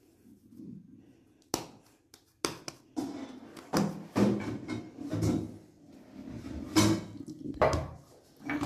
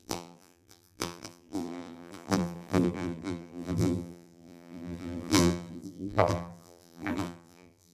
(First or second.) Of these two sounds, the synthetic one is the second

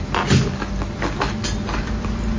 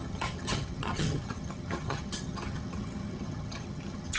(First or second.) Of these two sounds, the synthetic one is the second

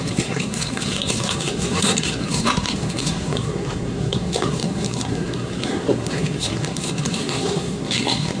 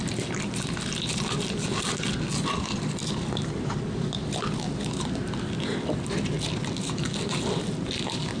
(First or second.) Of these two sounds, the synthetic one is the first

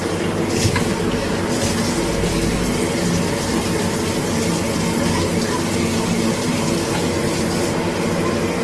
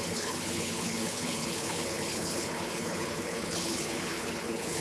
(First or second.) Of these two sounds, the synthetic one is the second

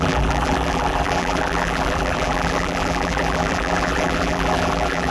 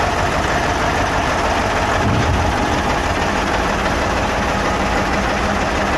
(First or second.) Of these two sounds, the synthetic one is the first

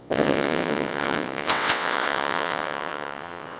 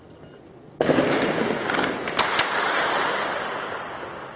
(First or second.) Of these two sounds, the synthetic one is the first